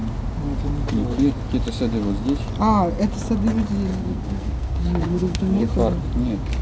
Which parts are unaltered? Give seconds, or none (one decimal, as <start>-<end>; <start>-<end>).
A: 0.0-3.9; 5.7-6.6

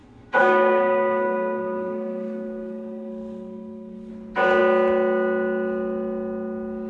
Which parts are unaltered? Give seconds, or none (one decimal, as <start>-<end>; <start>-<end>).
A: 4.1-6.9

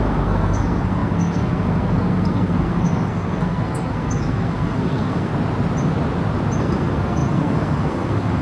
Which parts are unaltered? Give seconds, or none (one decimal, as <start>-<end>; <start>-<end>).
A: 5.3-6.6

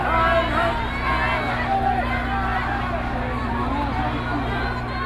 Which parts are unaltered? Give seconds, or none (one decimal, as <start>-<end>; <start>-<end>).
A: 0.0-5.1